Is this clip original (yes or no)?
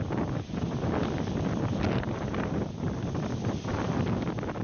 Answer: no